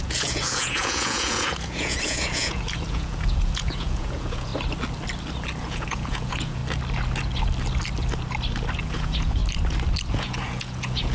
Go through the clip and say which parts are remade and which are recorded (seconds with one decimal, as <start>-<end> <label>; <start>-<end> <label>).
0.0-4.5 remade; 4.5-5.6 recorded; 5.6-6.6 remade; 6.6-8.8 recorded; 8.8-9.4 remade; 9.4-10.1 recorded; 10.1-11.1 remade